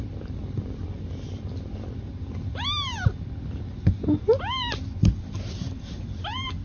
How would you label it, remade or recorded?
recorded